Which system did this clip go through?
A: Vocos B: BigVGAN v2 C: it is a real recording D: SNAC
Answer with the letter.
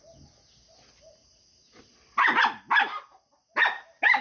C